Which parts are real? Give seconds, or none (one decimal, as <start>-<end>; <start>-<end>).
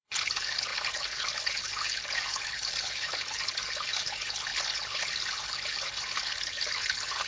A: none